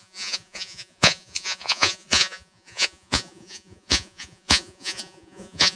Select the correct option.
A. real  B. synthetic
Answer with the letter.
B